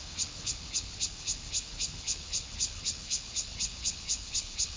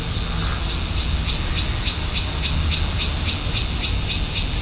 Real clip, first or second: second